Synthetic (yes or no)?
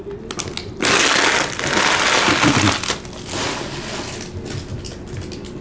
no